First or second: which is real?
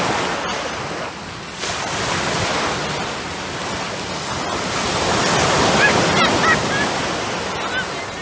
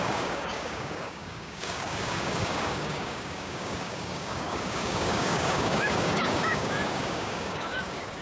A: first